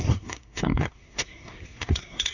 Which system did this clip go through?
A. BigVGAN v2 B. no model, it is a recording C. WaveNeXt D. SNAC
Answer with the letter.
D